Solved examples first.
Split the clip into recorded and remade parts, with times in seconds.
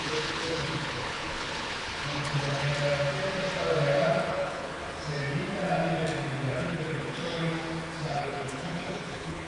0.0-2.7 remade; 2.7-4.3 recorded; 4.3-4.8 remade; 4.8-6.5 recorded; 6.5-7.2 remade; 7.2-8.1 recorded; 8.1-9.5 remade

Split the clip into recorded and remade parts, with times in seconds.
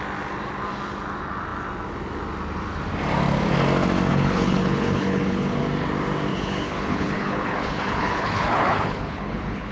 0.0-4.1 recorded; 4.1-5.6 remade; 5.6-6.3 recorded; 6.3-9.7 remade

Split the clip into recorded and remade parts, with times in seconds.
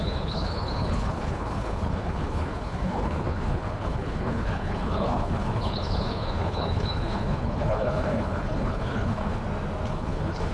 0.0-9.4 remade; 9.4-9.9 recorded; 9.9-10.5 remade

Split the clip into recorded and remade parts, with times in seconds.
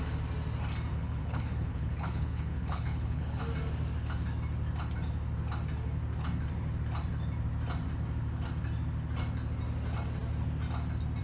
0.0-0.9 recorded; 0.9-3.4 remade; 3.4-11.2 recorded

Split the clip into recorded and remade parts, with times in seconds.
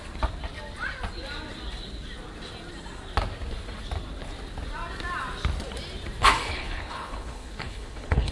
0.0-6.4 recorded; 6.4-8.3 remade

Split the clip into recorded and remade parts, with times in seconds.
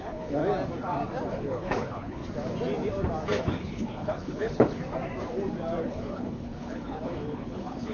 0.0-0.4 remade; 0.4-1.3 recorded; 1.3-2.2 remade; 2.2-3.4 recorded; 3.4-4.8 remade; 4.8-5.8 recorded; 5.8-7.9 remade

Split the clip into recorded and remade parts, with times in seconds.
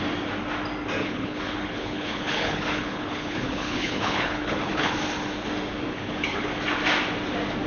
0.0-1.0 recorded; 1.0-4.9 remade; 4.9-5.9 recorded; 5.9-6.5 remade; 6.5-7.7 recorded